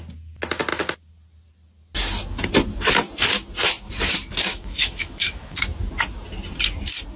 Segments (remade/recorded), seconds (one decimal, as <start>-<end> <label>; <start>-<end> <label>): 0.0-4.5 recorded; 4.5-5.6 remade; 5.6-7.2 recorded